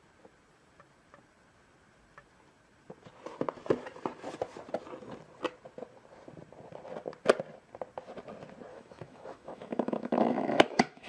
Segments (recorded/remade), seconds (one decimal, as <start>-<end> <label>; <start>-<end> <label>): 0.0-8.7 recorded; 8.7-11.1 remade